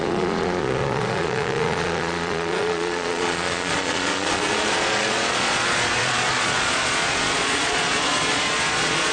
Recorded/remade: remade